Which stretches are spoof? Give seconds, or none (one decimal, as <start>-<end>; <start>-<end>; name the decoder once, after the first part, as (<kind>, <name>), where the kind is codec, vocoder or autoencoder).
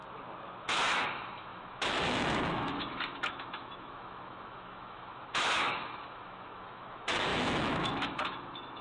0.6-8.8 (autoencoder, DAC-VAE)